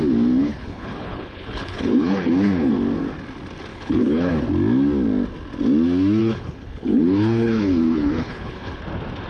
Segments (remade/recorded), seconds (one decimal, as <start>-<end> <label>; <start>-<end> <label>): 0.0-0.4 recorded; 0.4-2.7 remade; 2.7-3.7 recorded; 3.7-4.3 remade; 4.3-6.2 recorded; 6.2-8.8 remade; 8.8-9.3 recorded